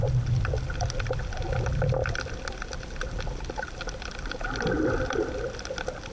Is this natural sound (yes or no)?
yes